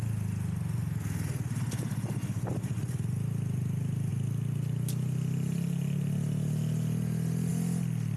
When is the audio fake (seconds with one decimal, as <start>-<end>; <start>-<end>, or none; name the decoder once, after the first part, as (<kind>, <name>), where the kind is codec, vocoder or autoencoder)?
none